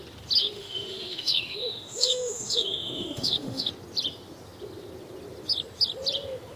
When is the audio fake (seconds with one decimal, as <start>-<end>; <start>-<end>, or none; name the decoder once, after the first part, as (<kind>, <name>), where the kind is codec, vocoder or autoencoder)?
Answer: 0.4-3.7 (autoencoder, DAC-VAE)